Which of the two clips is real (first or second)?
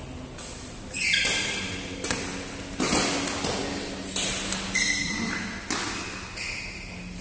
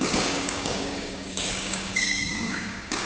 first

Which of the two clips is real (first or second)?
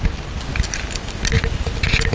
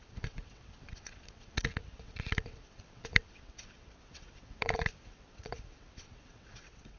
first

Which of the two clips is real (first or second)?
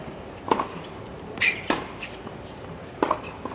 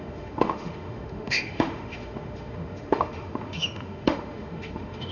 first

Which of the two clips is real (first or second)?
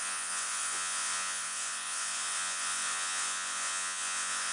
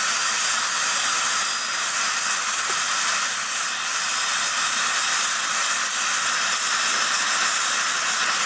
second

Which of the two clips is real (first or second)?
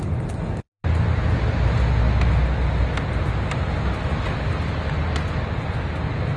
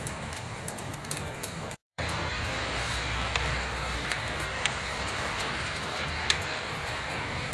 first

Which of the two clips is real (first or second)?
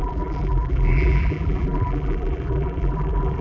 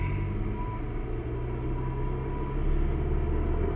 second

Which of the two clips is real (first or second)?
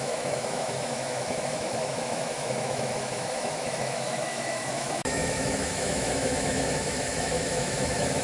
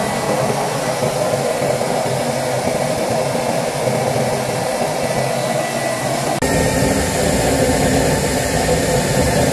second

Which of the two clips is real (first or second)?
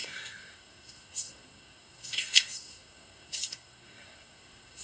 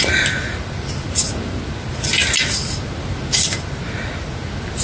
second